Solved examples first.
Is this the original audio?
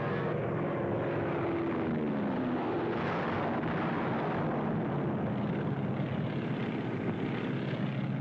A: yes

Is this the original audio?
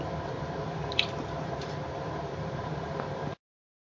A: no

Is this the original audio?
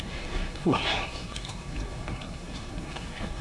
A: no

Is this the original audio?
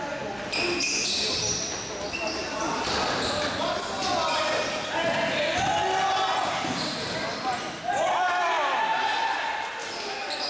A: yes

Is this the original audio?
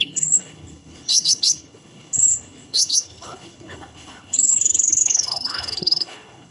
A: no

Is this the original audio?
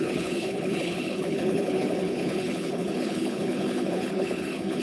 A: no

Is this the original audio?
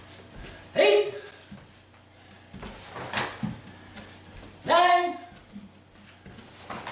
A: yes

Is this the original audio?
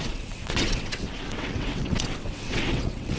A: no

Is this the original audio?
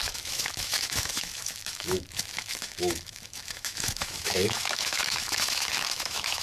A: no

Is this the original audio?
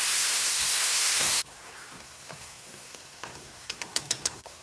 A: no